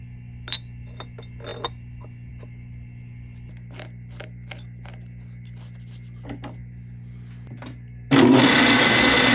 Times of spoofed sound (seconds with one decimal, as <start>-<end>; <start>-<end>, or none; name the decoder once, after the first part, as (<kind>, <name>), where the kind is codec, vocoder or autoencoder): none